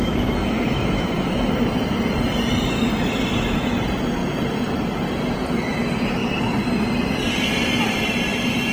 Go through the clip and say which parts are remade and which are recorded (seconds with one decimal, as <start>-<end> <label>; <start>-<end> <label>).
0.0-1.5 remade; 1.5-8.7 recorded